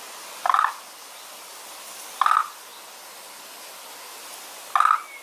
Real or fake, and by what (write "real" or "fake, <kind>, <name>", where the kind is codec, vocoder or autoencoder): real